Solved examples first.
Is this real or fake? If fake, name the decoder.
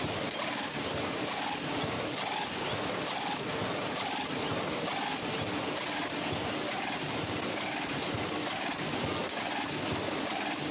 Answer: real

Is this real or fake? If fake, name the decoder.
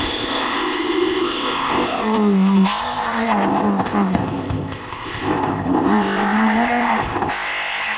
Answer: fake, codec, ZipCodec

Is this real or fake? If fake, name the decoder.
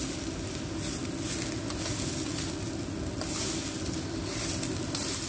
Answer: real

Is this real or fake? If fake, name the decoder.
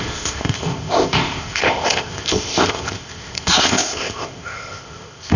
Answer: fake, codec, ZipCodec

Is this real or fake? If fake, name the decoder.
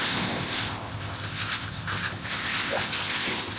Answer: fake, codec, ZipCodec